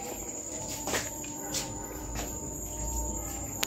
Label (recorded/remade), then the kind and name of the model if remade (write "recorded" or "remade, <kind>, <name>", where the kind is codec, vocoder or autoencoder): remade, vocoder, BigVGAN v2